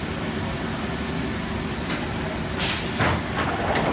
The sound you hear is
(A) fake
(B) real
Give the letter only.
B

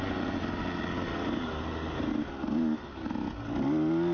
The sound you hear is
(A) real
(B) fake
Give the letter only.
A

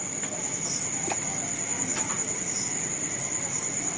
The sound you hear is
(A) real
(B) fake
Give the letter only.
A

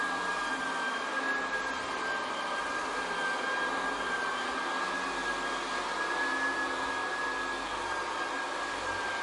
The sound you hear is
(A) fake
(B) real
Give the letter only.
B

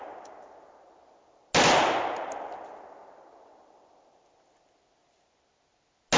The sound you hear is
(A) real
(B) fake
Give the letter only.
A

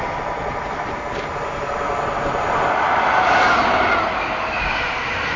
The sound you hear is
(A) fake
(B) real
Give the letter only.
B